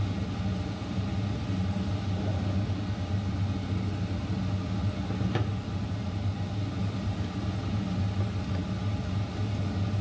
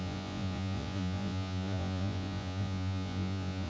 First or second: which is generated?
second